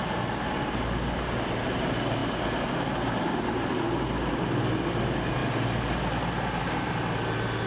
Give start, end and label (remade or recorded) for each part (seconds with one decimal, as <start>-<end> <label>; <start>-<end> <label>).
0.0-7.7 recorded